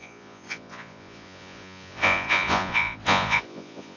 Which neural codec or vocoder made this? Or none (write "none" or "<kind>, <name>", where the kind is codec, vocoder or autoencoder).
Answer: vocoder, Vocos